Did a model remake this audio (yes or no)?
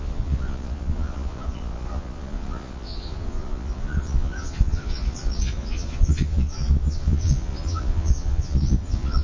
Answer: yes